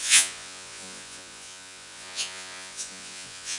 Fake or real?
fake